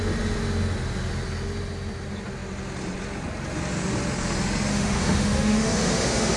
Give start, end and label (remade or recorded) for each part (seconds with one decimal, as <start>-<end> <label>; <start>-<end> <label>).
0.0-4.7 recorded; 4.7-6.4 remade